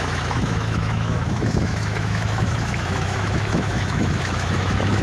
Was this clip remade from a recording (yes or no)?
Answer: yes